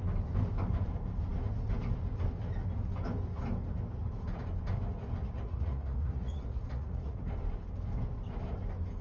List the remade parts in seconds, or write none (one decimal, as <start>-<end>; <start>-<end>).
5.2-7.2